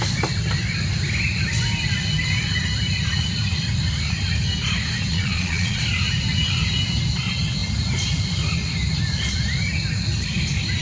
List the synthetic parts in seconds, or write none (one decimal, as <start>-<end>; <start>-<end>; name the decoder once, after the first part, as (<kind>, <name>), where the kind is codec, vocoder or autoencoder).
5.1-5.8 (vocoder, Vocos)